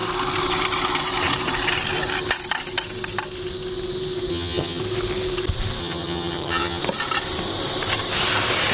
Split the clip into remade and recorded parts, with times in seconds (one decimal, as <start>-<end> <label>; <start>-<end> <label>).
0.0-4.3 recorded; 4.3-4.8 remade; 4.8-5.8 recorded; 5.8-6.8 remade; 6.8-8.7 recorded

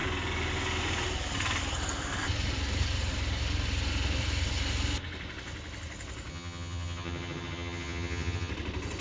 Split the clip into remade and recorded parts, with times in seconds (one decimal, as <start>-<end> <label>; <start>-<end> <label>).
0.0-6.3 recorded; 6.3-8.5 remade; 8.5-9.0 recorded

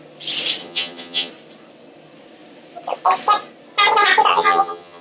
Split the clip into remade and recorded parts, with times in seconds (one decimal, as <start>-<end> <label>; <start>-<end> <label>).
0.0-0.6 recorded; 0.6-1.3 remade; 1.3-4.3 recorded; 4.3-5.0 remade

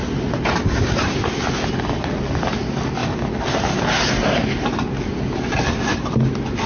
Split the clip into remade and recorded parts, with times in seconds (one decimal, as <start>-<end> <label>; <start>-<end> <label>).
0.0-6.7 recorded

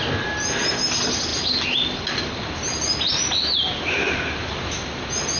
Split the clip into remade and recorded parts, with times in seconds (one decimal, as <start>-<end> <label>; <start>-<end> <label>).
0.0-5.4 recorded

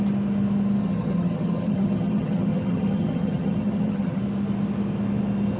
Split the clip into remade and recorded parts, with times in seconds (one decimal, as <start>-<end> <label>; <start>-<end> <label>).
0.0-0.8 recorded; 0.8-4.2 remade; 4.2-5.6 recorded